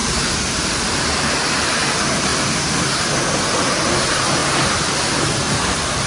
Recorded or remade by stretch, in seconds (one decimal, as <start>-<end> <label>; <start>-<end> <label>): 0.0-2.3 remade; 2.3-3.3 recorded; 3.3-6.1 remade